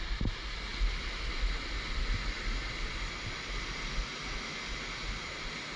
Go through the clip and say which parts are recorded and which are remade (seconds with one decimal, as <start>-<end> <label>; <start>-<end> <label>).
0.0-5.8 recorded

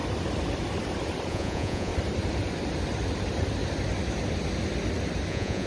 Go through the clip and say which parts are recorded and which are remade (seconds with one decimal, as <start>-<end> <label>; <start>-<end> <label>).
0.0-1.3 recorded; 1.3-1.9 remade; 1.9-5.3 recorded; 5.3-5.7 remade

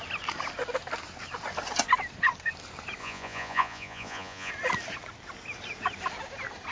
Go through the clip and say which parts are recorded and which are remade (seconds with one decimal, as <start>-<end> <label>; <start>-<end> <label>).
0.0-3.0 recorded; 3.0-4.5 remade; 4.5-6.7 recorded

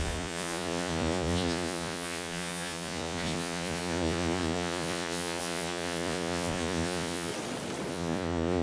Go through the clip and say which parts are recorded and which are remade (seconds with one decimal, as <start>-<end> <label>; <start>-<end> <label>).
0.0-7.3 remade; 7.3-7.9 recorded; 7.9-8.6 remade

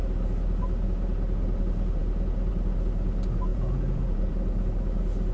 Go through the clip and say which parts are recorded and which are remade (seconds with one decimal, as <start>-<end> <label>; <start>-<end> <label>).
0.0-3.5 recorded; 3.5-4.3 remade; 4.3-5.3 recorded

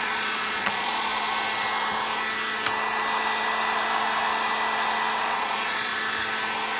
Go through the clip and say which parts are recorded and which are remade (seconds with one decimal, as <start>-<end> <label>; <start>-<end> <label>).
0.0-1.1 remade; 1.1-5.2 recorded; 5.2-5.9 remade; 5.9-6.8 recorded